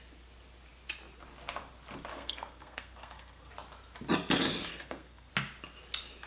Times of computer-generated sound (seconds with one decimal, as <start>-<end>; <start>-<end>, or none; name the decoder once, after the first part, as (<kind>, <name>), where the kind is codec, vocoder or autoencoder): 2.1-3.5 (codec, SNAC); 4.7-5.3